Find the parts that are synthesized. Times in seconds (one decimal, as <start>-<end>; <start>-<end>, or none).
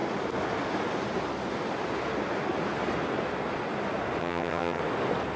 4.2-4.8